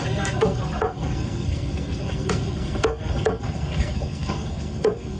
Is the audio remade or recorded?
remade